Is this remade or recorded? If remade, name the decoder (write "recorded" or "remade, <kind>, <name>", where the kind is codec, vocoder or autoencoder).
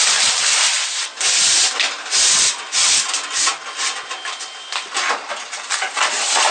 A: recorded